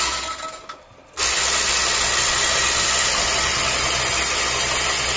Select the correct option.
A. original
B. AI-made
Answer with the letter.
A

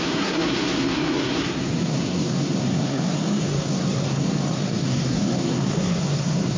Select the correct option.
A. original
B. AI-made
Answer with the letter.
B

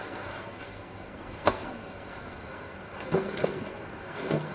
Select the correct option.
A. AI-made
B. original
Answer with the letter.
A